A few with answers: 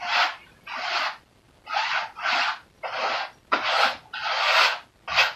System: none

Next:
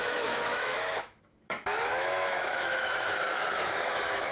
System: autoencoder, DAC-VAE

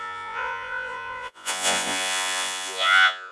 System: vocoder, Vocos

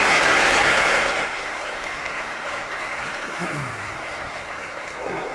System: codec, SNAC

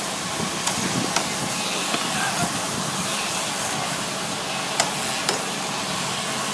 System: none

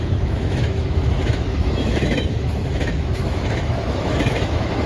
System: autoencoder, DAC-VAE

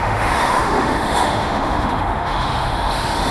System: autoencoder, DAC-VAE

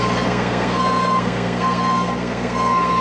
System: codec, SNAC